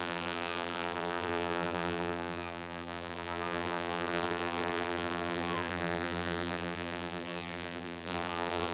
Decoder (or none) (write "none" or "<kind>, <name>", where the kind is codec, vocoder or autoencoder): vocoder, BigVGAN v2